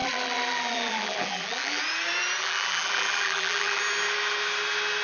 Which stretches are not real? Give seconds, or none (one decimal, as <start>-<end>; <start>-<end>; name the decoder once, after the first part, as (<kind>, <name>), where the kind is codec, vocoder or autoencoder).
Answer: 0.0-1.8 (vocoder, BigVGAN v2); 2.4-3.8